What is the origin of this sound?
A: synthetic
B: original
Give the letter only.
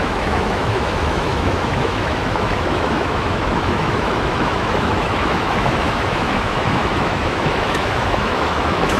A